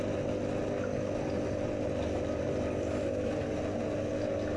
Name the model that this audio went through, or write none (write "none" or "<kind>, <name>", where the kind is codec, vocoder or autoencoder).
none